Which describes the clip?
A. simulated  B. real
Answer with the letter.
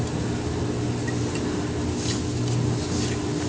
B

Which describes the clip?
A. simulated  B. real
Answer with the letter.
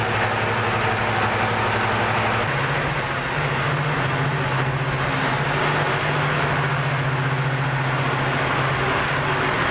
B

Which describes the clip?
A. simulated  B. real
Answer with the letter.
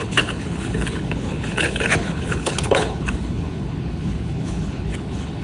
A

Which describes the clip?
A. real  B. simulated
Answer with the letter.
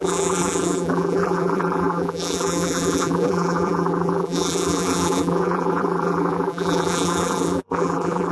B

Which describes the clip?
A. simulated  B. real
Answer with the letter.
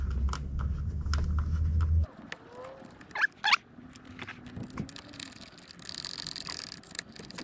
B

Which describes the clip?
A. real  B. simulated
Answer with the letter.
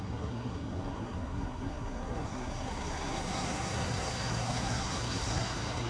B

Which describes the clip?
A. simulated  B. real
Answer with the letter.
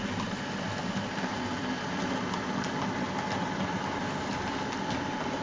B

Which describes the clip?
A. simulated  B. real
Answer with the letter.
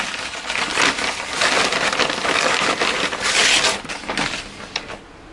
B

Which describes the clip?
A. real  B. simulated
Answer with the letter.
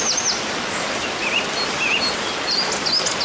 A